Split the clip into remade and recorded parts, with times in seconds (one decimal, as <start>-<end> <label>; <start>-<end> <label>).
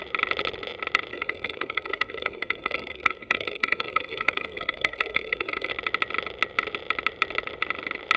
0.0-1.1 recorded; 1.1-5.7 remade; 5.7-8.2 recorded